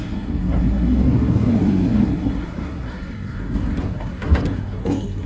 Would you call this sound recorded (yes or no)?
no